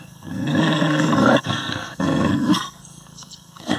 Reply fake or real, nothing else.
fake